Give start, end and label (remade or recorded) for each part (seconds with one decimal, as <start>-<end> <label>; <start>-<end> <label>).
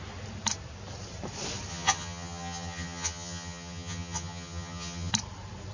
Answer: 0.0-1.7 recorded; 1.7-5.1 remade; 5.1-5.7 recorded